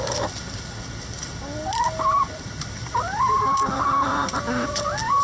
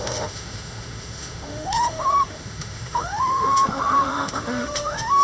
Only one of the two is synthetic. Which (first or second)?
second